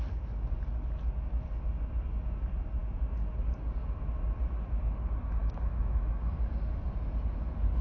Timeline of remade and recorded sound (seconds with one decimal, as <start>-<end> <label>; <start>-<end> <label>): 0.0-5.4 recorded; 5.4-6.4 remade; 6.4-7.8 recorded